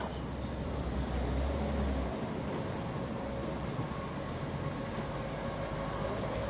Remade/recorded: recorded